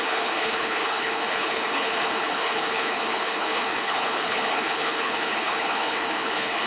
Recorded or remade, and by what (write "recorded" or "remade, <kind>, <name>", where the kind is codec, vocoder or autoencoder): remade, codec, HILCodec